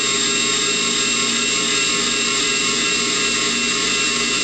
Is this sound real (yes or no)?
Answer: yes